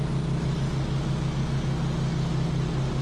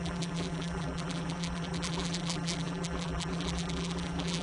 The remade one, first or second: second